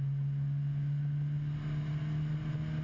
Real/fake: real